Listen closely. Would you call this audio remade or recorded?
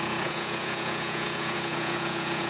remade